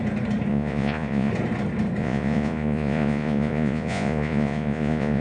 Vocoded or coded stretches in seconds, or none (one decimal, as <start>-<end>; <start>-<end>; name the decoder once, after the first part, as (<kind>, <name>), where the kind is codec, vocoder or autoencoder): 0.5-1.3 (vocoder, Vocos); 2.0-5.2